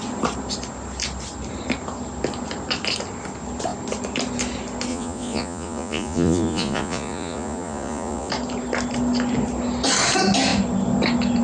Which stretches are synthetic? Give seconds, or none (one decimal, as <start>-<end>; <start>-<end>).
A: 4.9-8.3